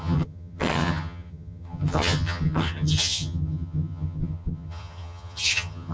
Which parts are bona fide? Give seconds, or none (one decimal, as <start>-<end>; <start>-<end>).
none

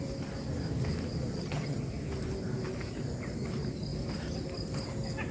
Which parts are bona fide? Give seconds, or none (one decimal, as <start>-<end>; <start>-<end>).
0.0-1.3; 1.8-5.3

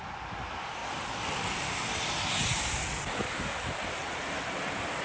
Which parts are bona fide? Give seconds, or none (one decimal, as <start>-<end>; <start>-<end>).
0.0-5.0

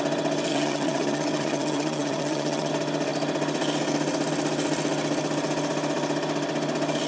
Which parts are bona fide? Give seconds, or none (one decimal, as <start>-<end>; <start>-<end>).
0.0-0.5; 2.7-7.1

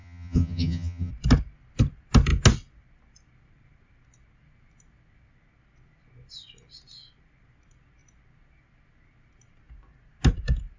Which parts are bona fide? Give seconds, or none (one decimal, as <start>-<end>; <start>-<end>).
1.1-10.8